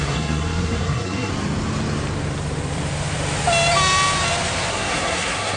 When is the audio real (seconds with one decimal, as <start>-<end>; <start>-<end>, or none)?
1.3-4.7